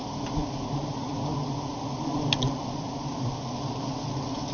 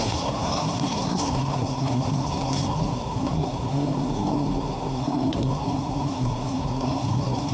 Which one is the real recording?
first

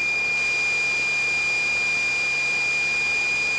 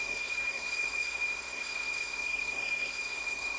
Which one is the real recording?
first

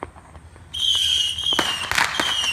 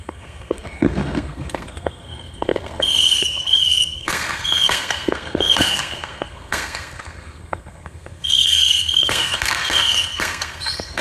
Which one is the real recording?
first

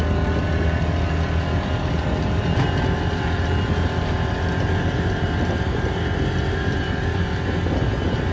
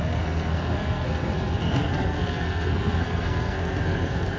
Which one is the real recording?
first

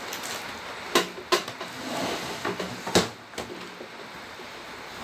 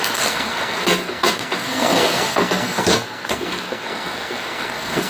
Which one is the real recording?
first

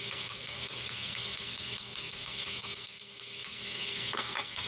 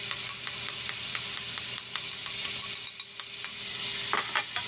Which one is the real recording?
second